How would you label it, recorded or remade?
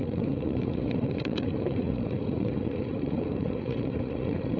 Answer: remade